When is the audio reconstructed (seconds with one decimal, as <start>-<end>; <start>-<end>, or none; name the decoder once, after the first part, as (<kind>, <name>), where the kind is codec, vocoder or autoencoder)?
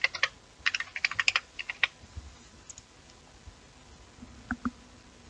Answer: none